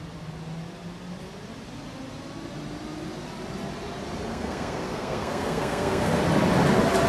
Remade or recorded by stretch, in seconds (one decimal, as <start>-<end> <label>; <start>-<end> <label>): 0.0-4.3 recorded; 4.3-6.2 remade; 6.2-7.1 recorded